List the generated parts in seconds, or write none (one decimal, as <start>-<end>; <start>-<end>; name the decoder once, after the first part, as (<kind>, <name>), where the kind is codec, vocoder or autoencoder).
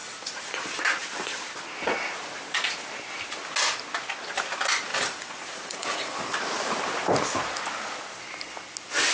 0.0-0.8 (vocoder, BigVGAN v2); 4.9-6.2